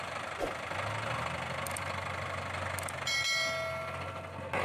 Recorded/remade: recorded